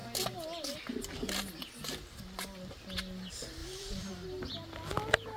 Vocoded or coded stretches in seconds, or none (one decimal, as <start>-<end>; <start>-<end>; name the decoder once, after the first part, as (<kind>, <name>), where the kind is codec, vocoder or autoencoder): 3.6-4.1 (vocoder, BigVGAN v2)